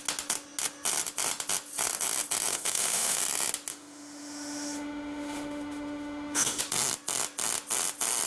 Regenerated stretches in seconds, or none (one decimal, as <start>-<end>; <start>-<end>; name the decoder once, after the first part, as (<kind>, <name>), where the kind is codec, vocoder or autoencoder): 2.5-3.2 (autoencoder, DAC-VAE); 3.7-6.6